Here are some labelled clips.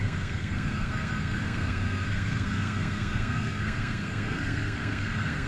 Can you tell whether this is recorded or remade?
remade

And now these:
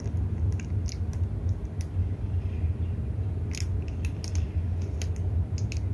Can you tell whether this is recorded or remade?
recorded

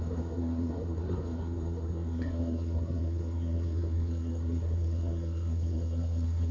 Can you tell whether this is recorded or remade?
remade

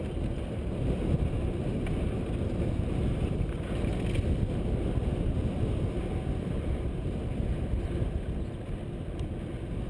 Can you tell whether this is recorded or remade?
recorded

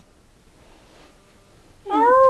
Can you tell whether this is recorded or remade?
recorded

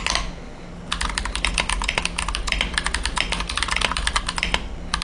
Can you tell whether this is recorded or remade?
recorded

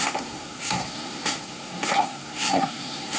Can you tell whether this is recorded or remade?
remade